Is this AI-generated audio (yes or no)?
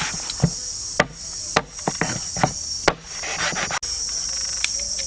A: no